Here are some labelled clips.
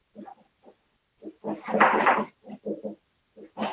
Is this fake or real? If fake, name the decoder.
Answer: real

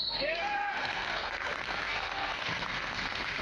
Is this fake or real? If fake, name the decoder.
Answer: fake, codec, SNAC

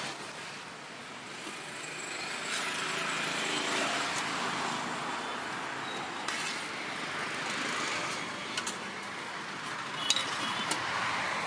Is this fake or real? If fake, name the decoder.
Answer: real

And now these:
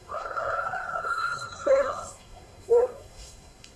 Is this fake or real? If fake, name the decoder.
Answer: fake, codec, SNAC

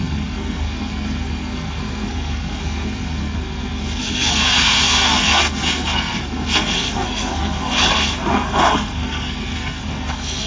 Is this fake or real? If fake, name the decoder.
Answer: fake, codec, SNAC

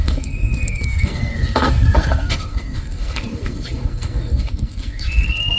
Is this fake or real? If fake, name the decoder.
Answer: fake, codec, SNAC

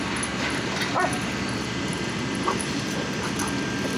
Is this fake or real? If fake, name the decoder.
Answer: real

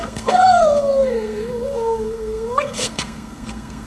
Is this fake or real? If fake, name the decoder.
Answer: fake, codec, SNAC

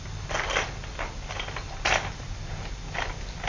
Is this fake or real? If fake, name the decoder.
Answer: real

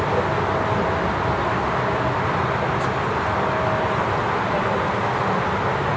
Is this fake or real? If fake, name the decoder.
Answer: real